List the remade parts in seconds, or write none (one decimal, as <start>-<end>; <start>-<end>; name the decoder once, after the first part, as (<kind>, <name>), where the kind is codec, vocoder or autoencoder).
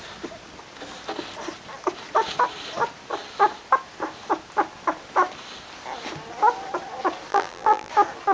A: 7.3-7.9 (vocoder, BigVGAN v2)